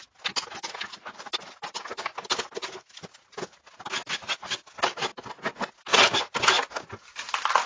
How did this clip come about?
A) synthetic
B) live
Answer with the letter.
B